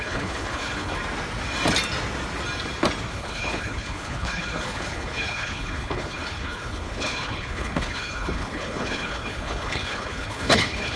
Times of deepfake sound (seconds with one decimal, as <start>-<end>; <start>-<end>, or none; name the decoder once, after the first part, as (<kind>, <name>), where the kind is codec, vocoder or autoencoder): 0.0-0.9 (codec, HILCodec); 3.1-11.0